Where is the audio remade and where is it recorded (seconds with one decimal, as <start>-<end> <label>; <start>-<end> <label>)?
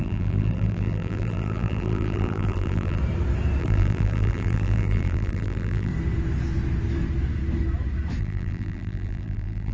0.0-3.0 remade; 3.0-3.6 recorded; 3.6-5.9 remade; 5.9-8.2 recorded; 8.2-9.7 remade